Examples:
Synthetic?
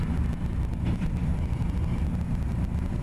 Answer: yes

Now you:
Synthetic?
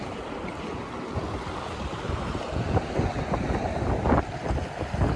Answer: no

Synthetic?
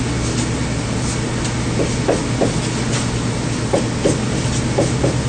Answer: no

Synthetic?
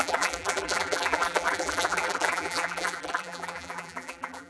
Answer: yes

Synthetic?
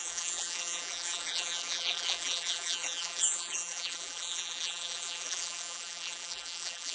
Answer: yes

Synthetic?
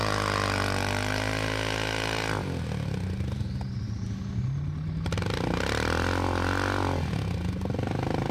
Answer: no